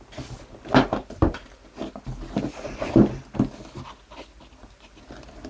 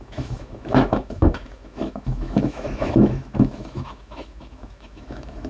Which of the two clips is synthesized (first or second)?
second